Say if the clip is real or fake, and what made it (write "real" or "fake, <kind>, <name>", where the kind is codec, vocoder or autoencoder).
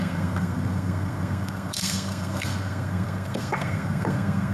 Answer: fake, codec, SNAC